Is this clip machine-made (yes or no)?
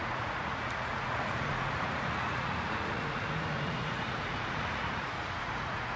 yes